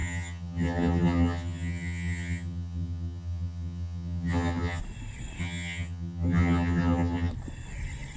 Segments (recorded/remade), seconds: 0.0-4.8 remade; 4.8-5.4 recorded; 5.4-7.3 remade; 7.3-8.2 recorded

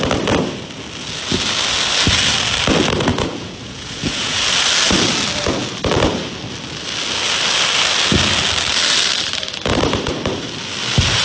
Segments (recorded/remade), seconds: 0.0-3.1 recorded; 3.1-4.4 remade; 4.4-11.2 recorded

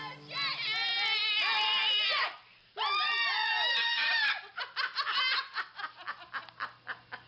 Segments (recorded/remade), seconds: 0.0-2.5 recorded; 2.5-3.5 remade; 3.5-7.3 recorded

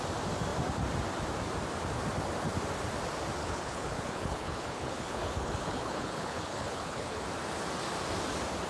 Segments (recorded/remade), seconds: 0.0-3.4 recorded; 3.4-7.2 remade; 7.2-8.7 recorded